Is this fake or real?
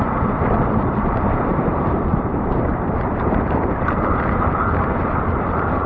fake